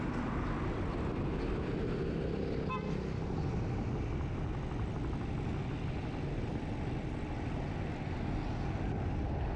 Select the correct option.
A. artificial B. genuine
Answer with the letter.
B